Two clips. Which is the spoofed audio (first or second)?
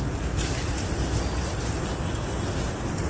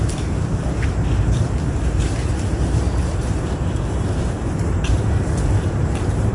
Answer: second